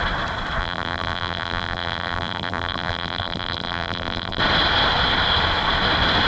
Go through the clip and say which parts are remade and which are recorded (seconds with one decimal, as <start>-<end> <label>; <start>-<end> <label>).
0.0-0.6 recorded; 0.6-4.4 remade; 4.4-6.3 recorded